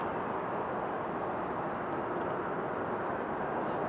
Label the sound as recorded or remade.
recorded